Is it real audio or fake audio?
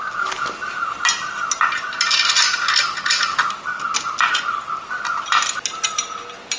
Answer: real